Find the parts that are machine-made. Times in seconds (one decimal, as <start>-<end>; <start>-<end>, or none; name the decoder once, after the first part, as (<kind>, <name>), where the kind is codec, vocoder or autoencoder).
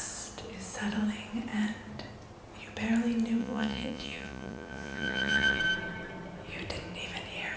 3.4-5.6 (vocoder, Vocos)